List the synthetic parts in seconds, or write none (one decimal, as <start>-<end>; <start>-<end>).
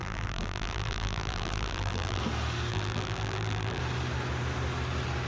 0.0-2.2; 2.7-3.8